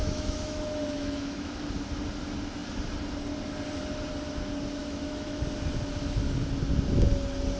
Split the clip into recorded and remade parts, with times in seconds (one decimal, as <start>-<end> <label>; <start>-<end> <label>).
0.0-1.6 remade; 1.6-4.8 recorded; 4.8-5.4 remade; 5.4-7.6 recorded